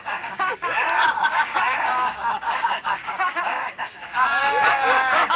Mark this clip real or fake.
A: fake